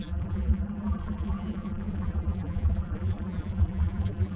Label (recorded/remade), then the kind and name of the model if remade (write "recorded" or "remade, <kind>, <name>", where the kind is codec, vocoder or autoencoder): remade, vocoder, BigVGAN v2